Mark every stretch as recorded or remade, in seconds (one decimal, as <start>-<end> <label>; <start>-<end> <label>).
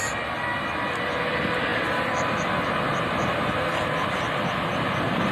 0.0-5.3 recorded